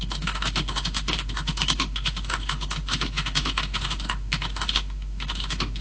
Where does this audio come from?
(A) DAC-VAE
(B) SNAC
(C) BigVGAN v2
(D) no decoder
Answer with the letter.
A